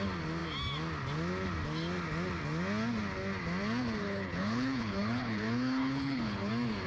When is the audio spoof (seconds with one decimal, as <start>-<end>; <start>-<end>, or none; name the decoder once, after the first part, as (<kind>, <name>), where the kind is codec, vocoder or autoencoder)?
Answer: 4.0-6.5 (codec, HILCodec)